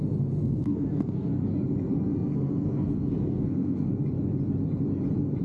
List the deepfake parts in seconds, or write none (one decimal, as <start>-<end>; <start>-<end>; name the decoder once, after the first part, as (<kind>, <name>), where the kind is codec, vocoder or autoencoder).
0.4-1.3 (codec, SNAC); 2.1-3.9